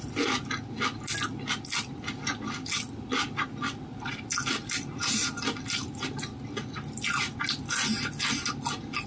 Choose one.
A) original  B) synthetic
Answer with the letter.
A